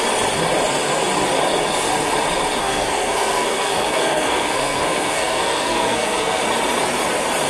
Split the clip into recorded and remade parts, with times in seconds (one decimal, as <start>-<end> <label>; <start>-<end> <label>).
0.0-2.6 recorded; 2.6-6.4 remade; 6.4-7.5 recorded